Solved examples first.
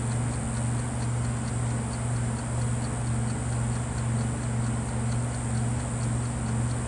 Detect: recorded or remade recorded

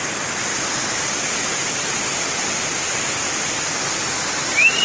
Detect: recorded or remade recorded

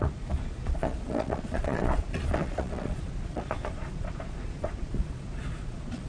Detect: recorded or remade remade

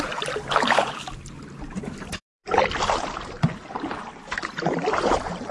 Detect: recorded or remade remade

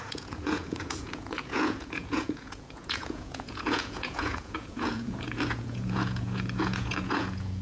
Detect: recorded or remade remade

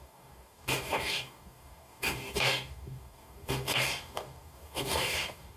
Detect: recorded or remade remade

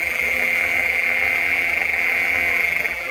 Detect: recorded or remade remade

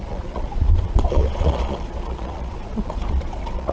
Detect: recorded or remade remade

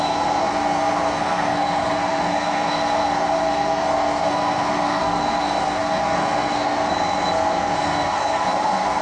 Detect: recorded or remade remade